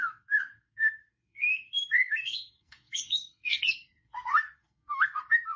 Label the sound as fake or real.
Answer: fake